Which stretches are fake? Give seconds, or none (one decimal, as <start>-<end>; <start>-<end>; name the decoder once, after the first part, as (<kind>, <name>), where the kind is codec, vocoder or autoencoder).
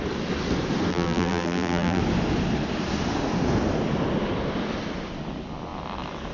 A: 0.9-2.0 (vocoder, BigVGAN v2)